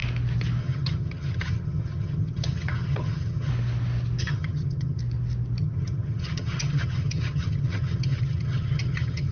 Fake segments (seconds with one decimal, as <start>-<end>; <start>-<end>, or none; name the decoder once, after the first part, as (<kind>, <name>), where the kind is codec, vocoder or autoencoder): 0.6-3.5 (vocoder, HiFi-GAN); 4.2-5.0; 5.6-9.3

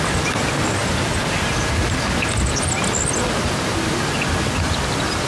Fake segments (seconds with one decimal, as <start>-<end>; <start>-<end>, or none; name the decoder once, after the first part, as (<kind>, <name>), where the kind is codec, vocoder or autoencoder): none